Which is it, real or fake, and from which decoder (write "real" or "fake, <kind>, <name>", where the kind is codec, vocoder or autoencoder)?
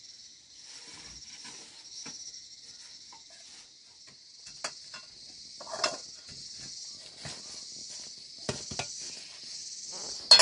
real